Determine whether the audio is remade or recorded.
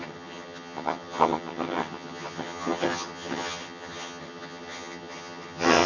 remade